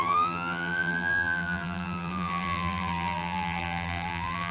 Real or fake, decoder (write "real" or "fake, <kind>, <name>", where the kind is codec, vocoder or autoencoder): fake, vocoder, BigVGAN v2